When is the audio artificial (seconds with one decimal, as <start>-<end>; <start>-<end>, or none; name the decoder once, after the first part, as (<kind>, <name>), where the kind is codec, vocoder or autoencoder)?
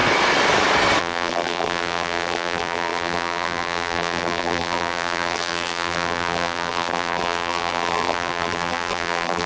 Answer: 1.0-9.5 (vocoder, BigVGAN v2)